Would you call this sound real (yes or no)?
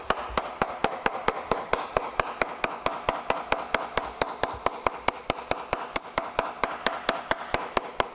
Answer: yes